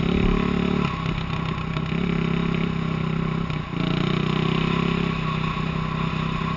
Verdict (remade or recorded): recorded